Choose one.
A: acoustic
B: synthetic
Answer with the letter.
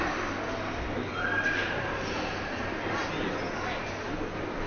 A